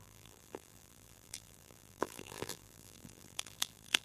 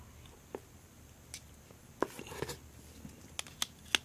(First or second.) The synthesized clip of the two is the first